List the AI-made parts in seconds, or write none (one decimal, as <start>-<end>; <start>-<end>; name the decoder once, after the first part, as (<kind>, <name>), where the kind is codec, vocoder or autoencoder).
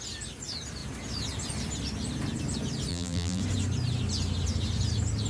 2.9-3.4 (vocoder, BigVGAN v2)